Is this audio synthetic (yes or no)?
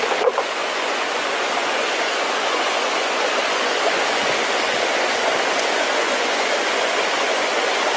yes